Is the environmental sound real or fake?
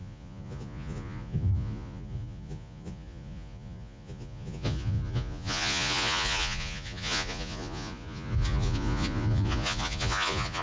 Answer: fake